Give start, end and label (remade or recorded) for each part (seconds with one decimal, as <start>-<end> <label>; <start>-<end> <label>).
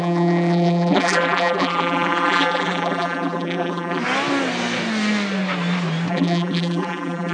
0.0-4.0 remade; 4.0-6.1 recorded; 6.1-7.3 remade